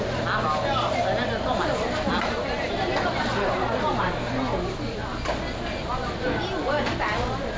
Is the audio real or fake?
real